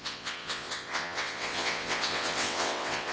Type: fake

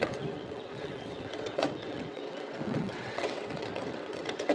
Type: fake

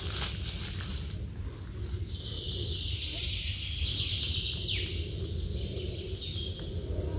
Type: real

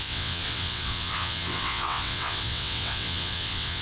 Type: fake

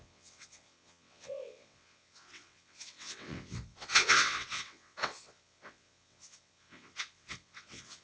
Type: fake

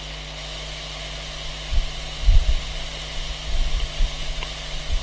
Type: real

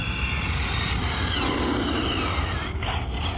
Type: real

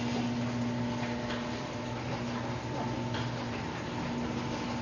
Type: real